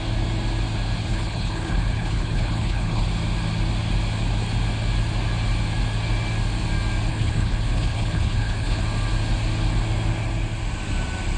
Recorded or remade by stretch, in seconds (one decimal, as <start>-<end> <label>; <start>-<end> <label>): 0.0-1.0 recorded; 1.0-3.0 remade; 3.0-7.1 recorded; 7.1-8.8 remade; 8.8-11.4 recorded